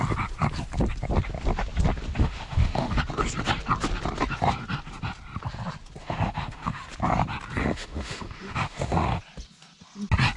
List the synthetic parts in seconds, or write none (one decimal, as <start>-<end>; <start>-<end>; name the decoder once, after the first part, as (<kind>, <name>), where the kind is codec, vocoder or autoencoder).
2.2-3.0 (autoencoder, DAC-VAE); 6.0-6.8; 7.6-9.2